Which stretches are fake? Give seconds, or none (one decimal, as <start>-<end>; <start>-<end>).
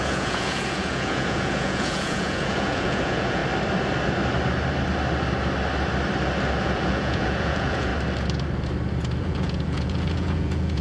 0.0-3.4; 6.6-7.9; 9.2-10.8